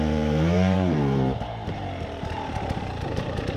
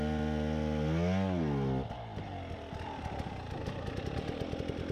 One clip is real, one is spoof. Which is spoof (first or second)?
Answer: first